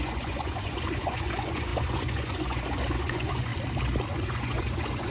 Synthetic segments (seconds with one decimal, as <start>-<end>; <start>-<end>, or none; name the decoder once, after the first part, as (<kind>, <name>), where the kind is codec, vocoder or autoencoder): 0.0-3.5 (vocoder, Vocos); 4.1-5.1